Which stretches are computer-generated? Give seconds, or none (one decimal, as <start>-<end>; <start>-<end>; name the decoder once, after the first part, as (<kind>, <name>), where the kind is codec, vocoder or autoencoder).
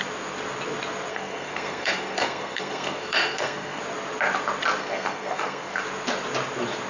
1.1-3.8 (codec, SNAC); 4.8-5.8